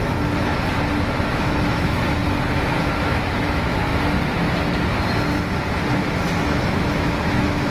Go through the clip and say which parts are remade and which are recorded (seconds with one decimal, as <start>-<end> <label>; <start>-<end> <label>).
0.0-0.5 remade; 0.5-1.3 recorded; 1.3-2.2 remade; 2.2-3.0 recorded; 3.0-3.9 remade; 3.9-5.9 recorded; 5.9-7.7 remade